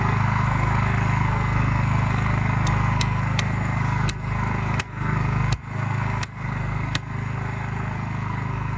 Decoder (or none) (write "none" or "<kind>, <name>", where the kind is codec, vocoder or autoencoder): codec, SNAC